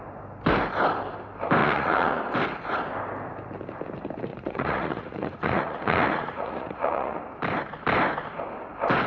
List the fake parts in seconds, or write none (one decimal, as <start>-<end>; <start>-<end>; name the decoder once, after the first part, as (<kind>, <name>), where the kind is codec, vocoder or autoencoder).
1.6-2.2 (vocoder, Vocos); 4.3-7.2